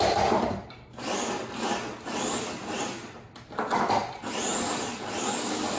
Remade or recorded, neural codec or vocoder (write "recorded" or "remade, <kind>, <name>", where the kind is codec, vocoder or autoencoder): recorded